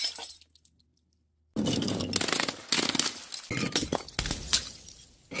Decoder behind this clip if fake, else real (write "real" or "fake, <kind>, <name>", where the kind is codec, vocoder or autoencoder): real